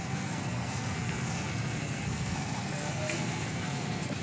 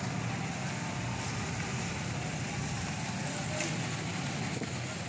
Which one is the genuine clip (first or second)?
second